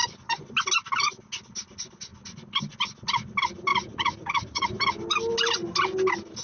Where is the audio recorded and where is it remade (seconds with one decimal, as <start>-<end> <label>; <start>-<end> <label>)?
0.0-3.7 recorded; 3.7-4.8 remade; 4.8-6.4 recorded